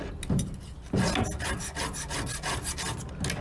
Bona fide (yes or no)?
yes